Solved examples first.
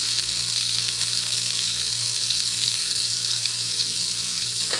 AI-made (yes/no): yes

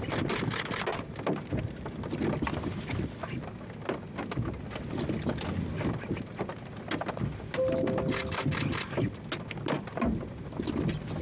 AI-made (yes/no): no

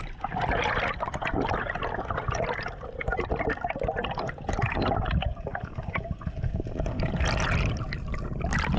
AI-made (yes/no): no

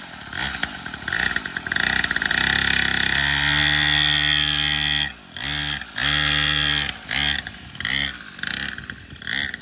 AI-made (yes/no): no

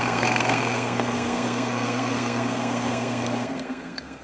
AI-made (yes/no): yes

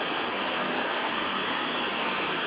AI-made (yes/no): yes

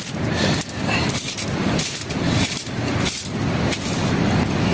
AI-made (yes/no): no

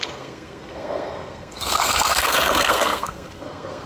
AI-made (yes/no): yes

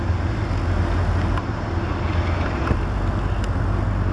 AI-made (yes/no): no